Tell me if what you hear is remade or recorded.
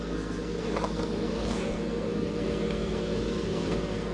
remade